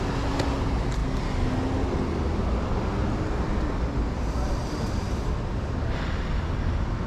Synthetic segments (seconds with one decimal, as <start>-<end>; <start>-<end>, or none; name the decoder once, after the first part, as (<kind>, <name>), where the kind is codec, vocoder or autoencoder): none